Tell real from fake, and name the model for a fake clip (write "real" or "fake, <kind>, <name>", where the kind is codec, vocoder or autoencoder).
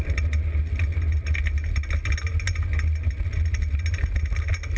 real